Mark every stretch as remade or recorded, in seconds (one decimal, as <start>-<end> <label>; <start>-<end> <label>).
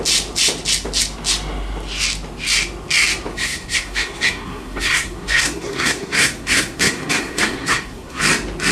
0.0-3.3 recorded; 3.3-8.2 remade; 8.2-8.7 recorded